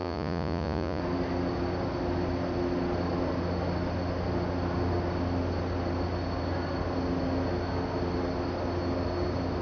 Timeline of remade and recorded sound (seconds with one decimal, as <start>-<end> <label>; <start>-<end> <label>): 0.0-1.0 remade; 1.0-9.6 recorded